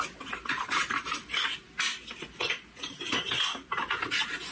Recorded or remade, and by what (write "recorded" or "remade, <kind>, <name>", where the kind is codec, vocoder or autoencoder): recorded